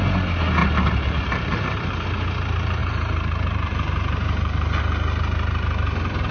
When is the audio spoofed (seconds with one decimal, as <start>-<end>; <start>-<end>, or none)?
0.6-2.0; 2.8-4.8